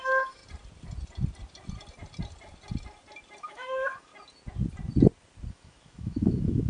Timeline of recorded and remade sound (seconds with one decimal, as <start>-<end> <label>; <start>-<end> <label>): 0.0-0.4 remade; 0.4-3.4 recorded; 3.4-4.1 remade; 4.1-5.5 recorded; 5.5-6.7 remade